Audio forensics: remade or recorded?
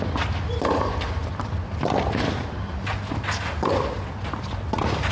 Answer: recorded